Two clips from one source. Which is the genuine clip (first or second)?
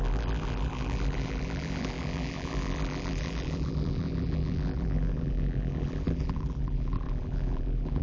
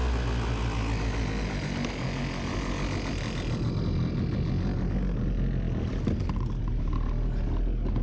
second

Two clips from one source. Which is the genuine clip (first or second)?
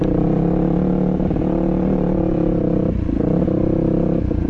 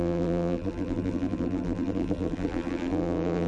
first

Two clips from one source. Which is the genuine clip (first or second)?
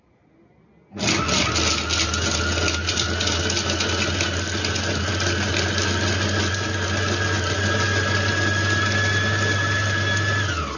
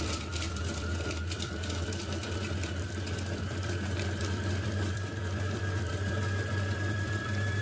first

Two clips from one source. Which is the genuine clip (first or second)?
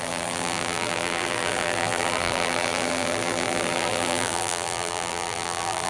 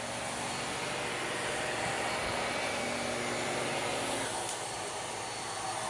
second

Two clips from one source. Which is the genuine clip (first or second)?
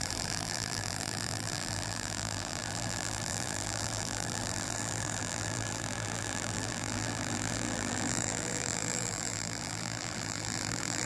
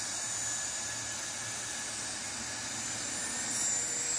second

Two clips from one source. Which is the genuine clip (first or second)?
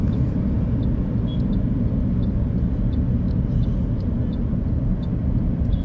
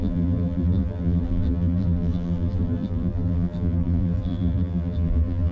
first